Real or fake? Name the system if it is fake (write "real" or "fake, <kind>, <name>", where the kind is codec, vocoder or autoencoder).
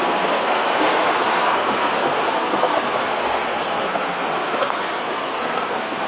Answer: fake, codec, SNAC